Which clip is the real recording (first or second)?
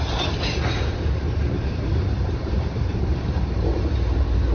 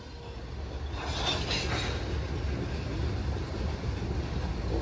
second